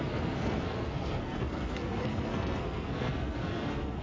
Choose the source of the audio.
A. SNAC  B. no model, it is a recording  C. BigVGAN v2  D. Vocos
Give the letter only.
A